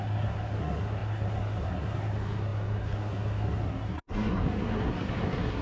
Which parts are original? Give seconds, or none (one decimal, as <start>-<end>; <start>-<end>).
none